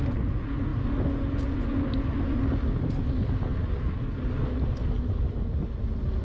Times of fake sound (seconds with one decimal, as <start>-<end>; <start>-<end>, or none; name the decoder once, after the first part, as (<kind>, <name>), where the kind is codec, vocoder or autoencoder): none